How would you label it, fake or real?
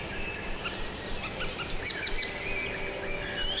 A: real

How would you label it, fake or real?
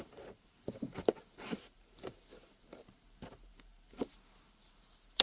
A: fake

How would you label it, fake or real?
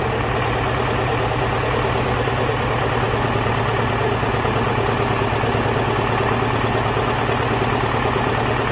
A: real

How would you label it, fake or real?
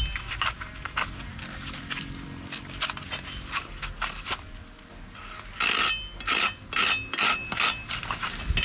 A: real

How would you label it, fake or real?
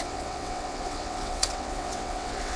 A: fake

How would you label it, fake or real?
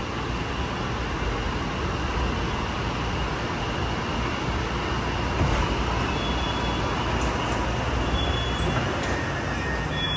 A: real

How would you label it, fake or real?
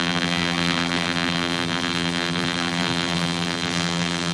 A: fake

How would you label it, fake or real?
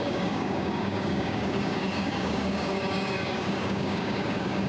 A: fake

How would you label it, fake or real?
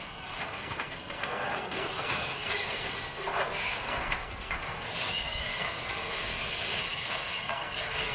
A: fake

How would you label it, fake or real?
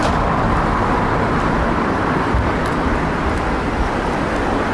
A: real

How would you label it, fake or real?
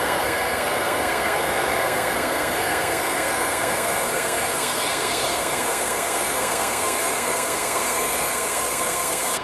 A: fake